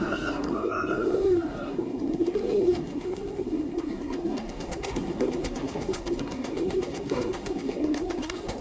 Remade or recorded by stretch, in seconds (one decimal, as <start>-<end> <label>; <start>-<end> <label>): 0.0-8.6 remade